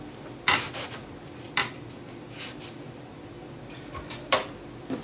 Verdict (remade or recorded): remade